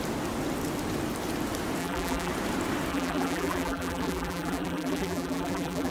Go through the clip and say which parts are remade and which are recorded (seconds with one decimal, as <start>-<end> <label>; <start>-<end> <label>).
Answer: 0.0-1.8 recorded; 1.8-2.3 remade; 2.3-2.9 recorded; 2.9-5.9 remade